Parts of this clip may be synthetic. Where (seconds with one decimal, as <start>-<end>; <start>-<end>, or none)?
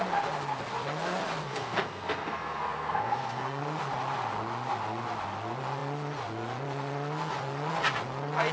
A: 1.4-3.6